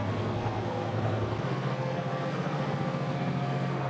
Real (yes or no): no